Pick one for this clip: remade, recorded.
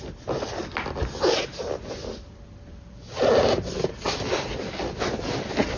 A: remade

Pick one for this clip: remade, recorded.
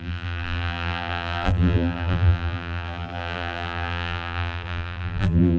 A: remade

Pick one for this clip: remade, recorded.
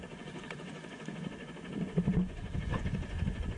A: remade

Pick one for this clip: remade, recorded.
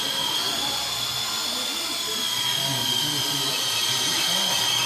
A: recorded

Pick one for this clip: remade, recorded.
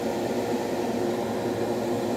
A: recorded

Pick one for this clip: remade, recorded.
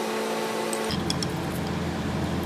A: recorded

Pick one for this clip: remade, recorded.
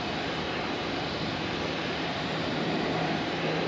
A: remade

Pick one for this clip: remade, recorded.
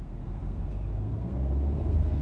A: remade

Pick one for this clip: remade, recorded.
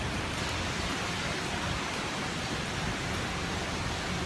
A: recorded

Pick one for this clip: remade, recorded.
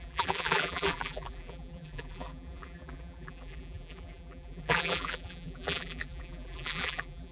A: remade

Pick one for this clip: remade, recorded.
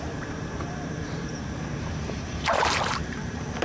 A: remade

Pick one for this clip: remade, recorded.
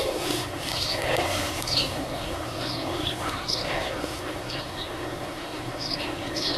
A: remade